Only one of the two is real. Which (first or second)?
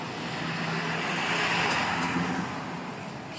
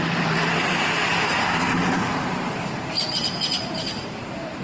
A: first